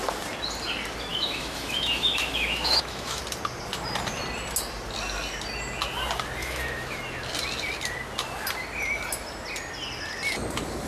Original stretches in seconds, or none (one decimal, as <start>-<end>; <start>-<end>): 0.0-1.1; 3.2-6.4; 7.0-10.9